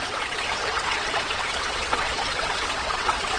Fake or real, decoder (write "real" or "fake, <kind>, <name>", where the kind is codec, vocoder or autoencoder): fake, vocoder, WaveNeXt